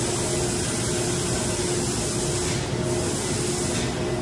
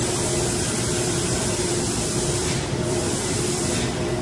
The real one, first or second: first